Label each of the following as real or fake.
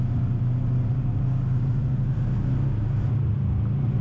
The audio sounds real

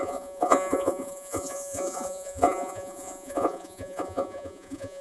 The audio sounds fake